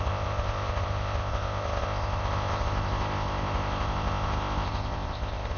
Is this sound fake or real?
fake